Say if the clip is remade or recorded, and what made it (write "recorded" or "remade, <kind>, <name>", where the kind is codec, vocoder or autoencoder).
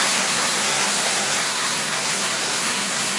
remade, codec, SNAC